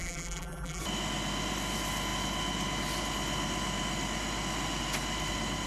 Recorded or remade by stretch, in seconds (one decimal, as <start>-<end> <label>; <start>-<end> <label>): 0.0-0.8 remade; 0.8-5.7 recorded